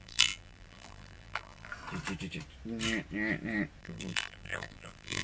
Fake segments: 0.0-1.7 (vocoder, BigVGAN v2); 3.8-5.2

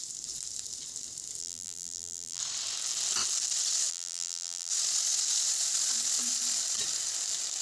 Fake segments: 1.4-2.4 (vocoder, BigVGAN v2); 3.9-4.7

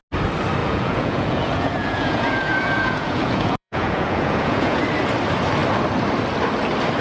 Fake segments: 0.6-4.8 (vocoder, Vocos)

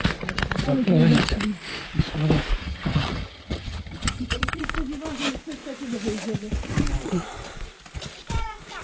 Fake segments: 2.6-4.6 (vocoder, HiFi-GAN)

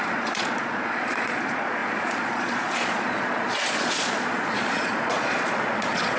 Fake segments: 0.0-6.2 (vocoder, Vocos)

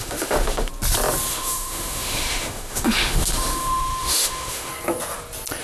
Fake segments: 0.0-0.7 (autoencoder, DAC-VAE); 1.3-4.7

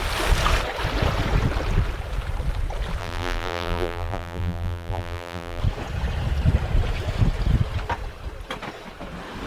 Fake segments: 3.0-5.6 (vocoder, BigVGAN v2)